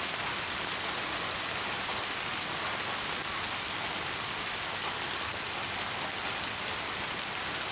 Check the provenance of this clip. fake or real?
real